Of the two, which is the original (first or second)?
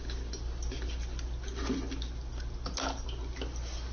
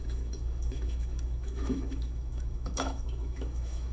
first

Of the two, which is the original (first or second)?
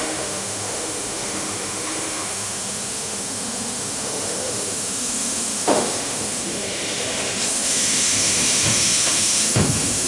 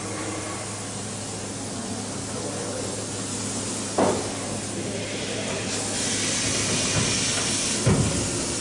second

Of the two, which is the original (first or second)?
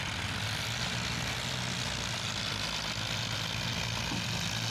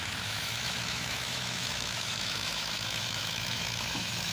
first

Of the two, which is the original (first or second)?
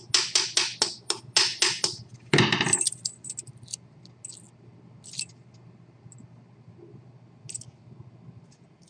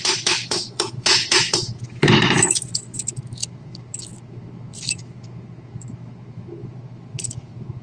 first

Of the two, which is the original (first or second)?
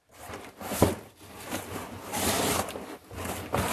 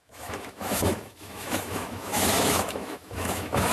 first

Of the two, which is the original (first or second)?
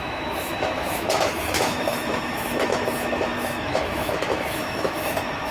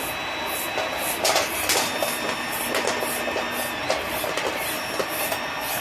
second